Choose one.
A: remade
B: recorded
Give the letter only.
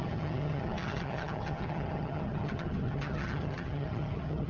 A